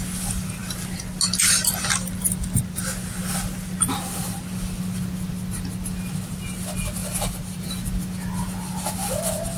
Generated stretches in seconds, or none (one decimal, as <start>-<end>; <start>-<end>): 7.0-7.9